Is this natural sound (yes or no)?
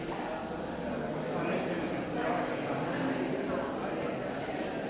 yes